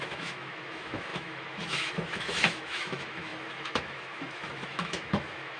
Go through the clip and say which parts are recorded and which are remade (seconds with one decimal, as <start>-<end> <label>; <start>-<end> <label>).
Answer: 0.0-5.6 remade